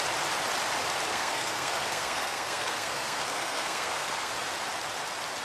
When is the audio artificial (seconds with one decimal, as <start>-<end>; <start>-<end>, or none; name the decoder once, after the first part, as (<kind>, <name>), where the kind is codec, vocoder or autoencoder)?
1.1-4.3 (codec, SNAC)